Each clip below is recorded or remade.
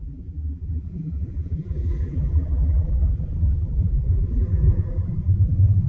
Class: remade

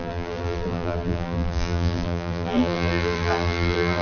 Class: remade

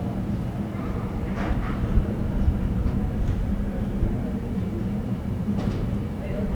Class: remade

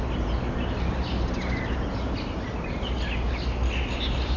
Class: recorded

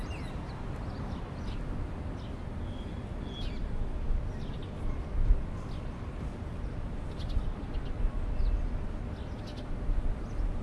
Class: recorded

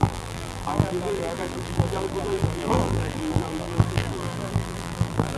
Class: remade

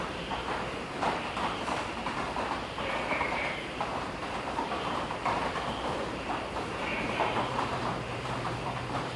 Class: remade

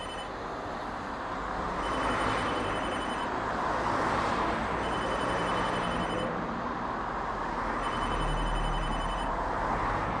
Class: remade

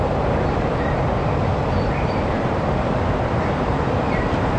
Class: remade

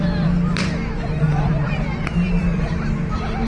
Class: remade